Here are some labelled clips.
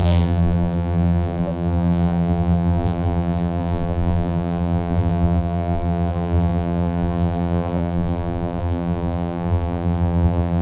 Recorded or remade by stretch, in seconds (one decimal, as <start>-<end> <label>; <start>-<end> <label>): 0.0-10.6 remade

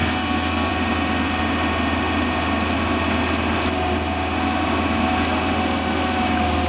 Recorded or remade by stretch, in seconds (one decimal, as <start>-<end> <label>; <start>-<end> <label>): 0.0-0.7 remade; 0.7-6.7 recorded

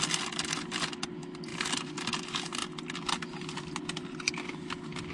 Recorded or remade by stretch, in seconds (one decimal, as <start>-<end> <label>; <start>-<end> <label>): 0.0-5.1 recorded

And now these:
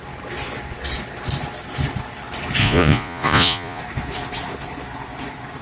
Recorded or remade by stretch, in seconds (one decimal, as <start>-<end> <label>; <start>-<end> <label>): 0.0-2.6 recorded; 2.6-3.8 remade; 3.8-5.6 recorded

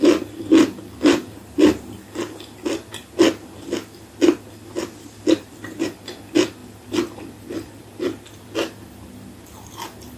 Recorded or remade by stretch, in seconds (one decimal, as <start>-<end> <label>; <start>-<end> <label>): 0.0-10.2 recorded